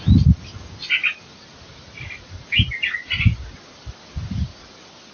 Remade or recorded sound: recorded